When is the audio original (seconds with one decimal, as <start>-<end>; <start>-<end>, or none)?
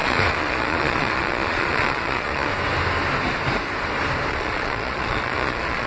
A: 2.5-4.3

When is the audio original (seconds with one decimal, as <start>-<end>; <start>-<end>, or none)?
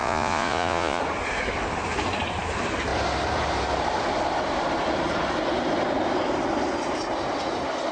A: 1.0-7.9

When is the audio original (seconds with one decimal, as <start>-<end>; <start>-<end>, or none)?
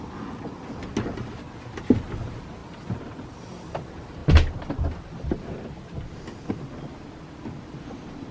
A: 0.0-8.3